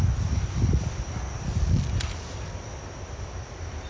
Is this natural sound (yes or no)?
yes